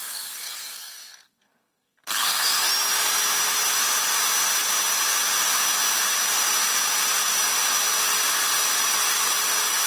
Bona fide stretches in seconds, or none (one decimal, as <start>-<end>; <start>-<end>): 2.7-9.9